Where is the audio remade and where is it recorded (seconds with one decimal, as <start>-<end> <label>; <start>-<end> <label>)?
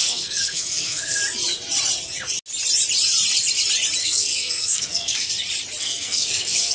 0.0-1.2 remade; 1.2-4.0 recorded; 4.0-5.3 remade; 5.3-5.8 recorded; 5.8-6.7 remade